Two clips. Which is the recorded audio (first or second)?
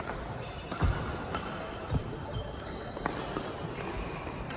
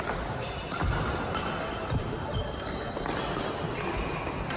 second